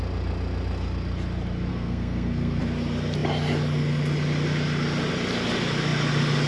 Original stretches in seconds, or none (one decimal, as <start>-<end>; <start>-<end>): 0.0-1.7; 2.6-6.5